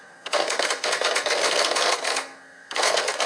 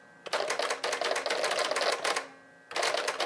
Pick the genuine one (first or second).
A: second